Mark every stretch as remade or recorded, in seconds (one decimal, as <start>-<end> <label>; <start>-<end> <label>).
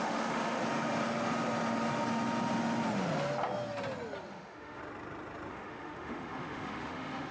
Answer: 0.0-0.6 remade; 0.6-4.3 recorded; 4.3-4.8 remade; 4.8-5.5 recorded; 5.5-7.3 remade